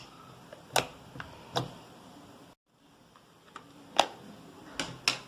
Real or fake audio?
real